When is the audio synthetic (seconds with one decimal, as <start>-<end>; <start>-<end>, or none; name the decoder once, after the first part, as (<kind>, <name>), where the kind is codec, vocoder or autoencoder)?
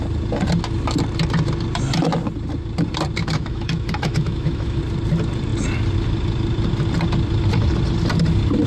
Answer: 3.2-4.8 (autoencoder, DAC-VAE)